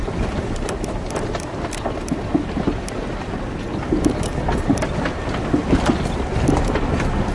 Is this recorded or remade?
remade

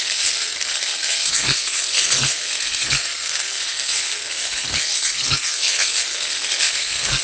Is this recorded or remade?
remade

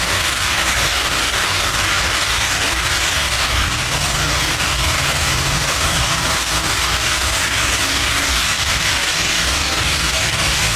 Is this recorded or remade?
remade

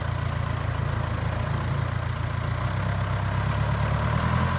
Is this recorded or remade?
recorded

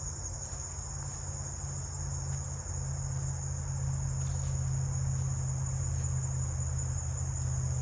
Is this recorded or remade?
recorded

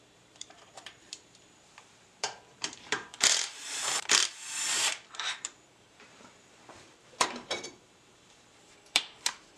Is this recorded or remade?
remade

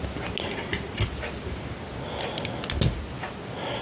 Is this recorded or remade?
recorded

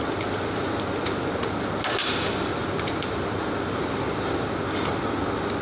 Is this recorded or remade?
recorded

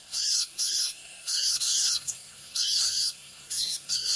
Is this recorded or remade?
remade